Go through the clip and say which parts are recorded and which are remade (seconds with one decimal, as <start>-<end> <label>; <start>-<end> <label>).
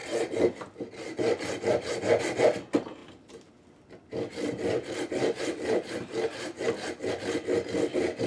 0.0-8.3 recorded